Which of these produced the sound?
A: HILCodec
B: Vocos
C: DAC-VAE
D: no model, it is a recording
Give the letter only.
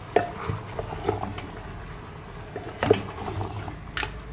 D